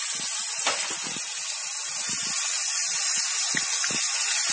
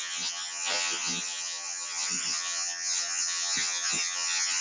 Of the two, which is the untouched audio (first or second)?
first